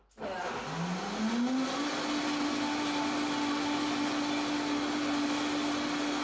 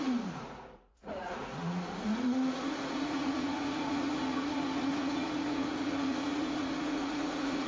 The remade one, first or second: second